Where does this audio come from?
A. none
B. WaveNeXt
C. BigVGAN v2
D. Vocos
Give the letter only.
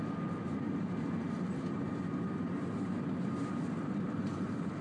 C